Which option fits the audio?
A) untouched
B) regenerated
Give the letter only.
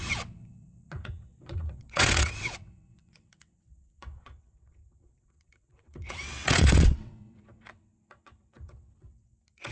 B